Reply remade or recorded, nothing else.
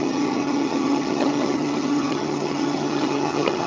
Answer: remade